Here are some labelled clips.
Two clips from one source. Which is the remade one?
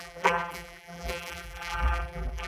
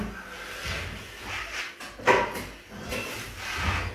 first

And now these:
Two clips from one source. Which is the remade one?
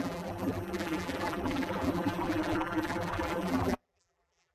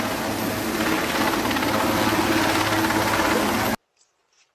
first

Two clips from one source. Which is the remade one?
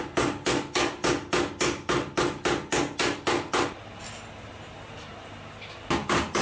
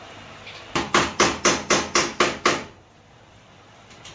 second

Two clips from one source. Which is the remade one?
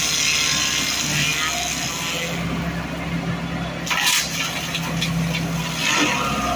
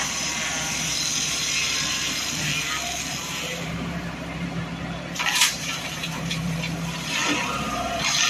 second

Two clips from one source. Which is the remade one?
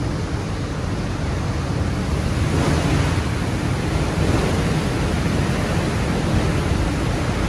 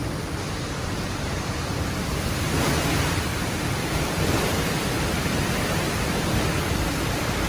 second